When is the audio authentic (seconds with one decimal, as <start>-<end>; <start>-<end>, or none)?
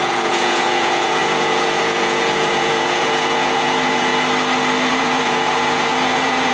4.1-4.9